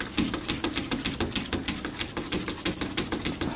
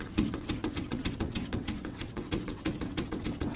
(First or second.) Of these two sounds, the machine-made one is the second